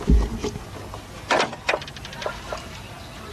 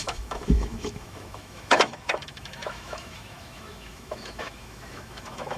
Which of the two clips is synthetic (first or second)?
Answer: second